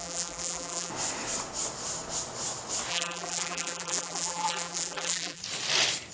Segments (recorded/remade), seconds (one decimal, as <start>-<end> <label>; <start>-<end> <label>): 0.0-0.9 remade; 0.9-2.9 recorded; 2.9-5.4 remade; 5.4-6.1 recorded